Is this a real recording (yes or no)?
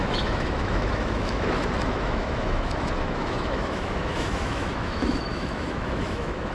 no